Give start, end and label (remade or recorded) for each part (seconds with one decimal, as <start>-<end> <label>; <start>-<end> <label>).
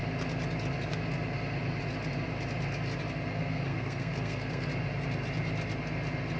0.0-3.3 recorded; 3.3-4.7 remade; 4.7-6.4 recorded